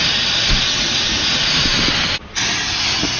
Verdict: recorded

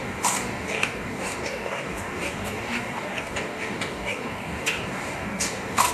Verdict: remade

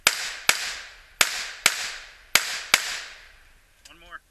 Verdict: recorded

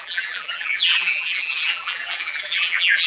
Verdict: remade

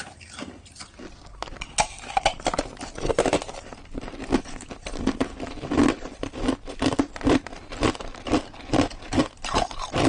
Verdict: recorded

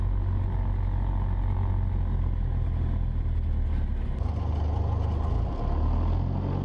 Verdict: recorded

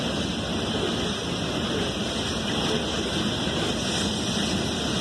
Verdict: recorded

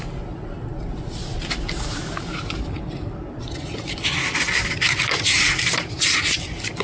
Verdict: recorded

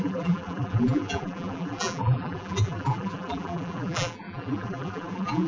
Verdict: remade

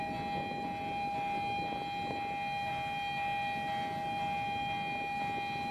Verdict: recorded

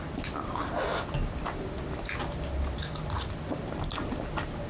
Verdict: recorded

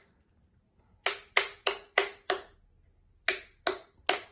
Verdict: recorded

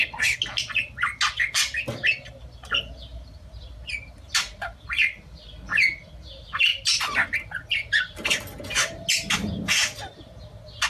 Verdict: recorded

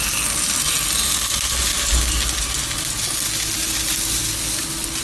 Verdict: recorded